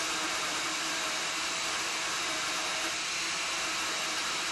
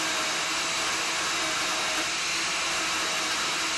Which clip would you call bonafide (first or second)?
second